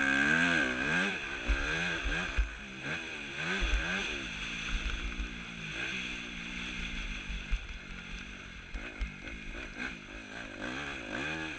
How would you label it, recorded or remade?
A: recorded